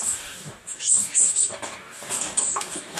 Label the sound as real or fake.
fake